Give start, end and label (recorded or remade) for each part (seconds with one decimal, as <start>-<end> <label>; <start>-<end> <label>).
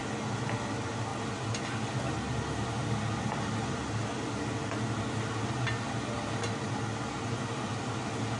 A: 0.0-8.4 recorded